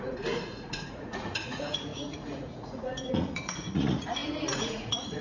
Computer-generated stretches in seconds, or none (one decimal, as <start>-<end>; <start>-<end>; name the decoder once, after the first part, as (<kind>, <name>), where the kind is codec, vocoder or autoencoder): 0.0-5.2 (vocoder, Vocos)